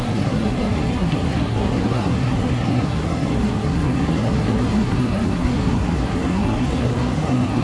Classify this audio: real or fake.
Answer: fake